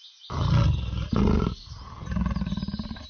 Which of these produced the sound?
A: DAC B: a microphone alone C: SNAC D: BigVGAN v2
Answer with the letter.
B